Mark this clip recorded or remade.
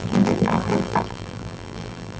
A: remade